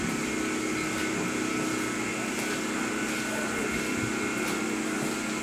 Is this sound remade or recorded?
recorded